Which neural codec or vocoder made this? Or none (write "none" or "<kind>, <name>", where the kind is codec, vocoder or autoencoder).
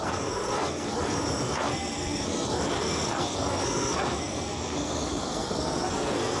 codec, SNAC